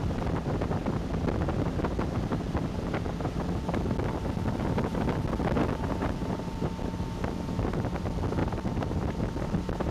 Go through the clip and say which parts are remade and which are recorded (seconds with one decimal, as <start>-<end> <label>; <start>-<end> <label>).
0.0-8.4 recorded; 8.4-9.9 remade